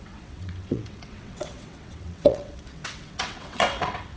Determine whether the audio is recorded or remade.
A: remade